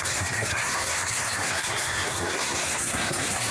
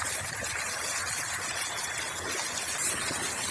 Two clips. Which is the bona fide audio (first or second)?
second